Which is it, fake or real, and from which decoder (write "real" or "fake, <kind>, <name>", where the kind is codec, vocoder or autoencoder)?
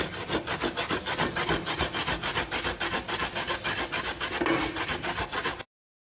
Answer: real